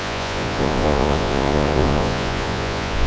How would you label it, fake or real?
fake